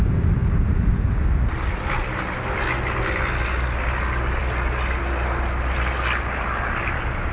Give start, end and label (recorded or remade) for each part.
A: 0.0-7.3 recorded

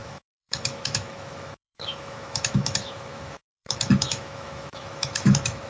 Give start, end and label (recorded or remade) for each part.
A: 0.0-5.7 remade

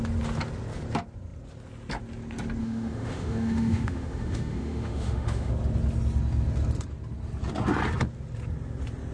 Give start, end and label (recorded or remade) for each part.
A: 0.0-2.6 recorded; 2.6-5.5 remade; 5.5-9.1 recorded